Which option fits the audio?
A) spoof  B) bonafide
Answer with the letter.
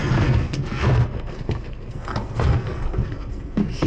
A